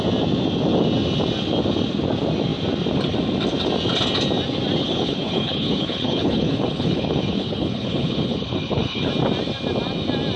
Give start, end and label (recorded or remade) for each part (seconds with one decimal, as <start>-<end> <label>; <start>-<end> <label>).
0.0-4.8 recorded; 4.8-9.1 remade; 9.1-10.4 recorded